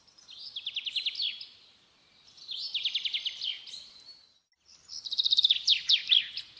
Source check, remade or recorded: recorded